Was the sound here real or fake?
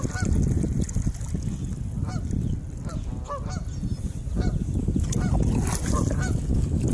real